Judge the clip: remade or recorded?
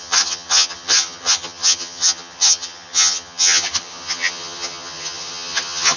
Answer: remade